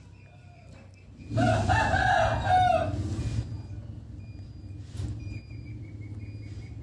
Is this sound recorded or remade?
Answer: recorded